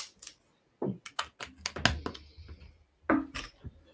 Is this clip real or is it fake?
real